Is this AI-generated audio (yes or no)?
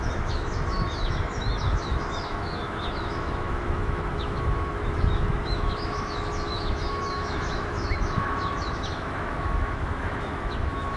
yes